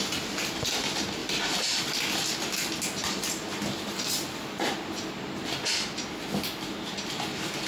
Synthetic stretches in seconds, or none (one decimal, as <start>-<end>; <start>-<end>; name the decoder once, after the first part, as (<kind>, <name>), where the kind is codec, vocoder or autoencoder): 1.2-1.8 (vocoder, BigVGAN v2); 3.5-4.0